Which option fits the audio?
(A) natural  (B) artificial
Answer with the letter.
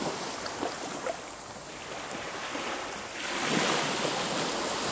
A